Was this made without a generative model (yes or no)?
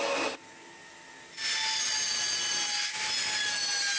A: yes